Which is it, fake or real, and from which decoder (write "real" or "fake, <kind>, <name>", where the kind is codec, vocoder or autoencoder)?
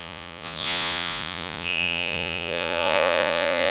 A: fake, vocoder, Vocos